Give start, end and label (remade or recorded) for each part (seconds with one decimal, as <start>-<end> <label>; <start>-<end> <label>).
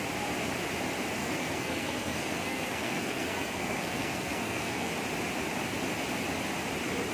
0.0-1.2 recorded; 1.2-4.9 remade; 4.9-7.1 recorded